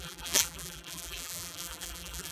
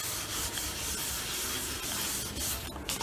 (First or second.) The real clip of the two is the second